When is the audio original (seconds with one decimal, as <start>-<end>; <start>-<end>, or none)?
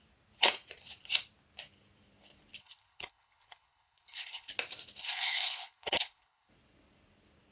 0.0-2.6; 4.5-5.0; 6.5-7.5